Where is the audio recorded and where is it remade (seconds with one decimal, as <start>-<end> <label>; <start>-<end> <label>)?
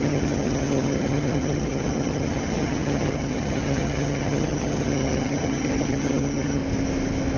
0.0-6.6 remade; 6.6-7.4 recorded